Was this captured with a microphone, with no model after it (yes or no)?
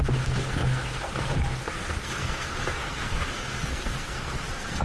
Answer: no